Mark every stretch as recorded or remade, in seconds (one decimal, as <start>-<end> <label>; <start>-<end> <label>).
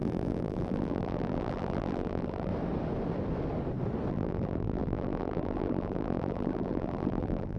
0.0-2.5 remade; 2.5-4.1 recorded; 4.1-7.6 remade